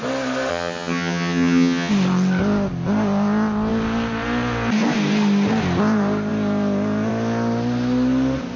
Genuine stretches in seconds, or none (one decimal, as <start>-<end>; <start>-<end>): 0.0-0.5; 1.9-8.6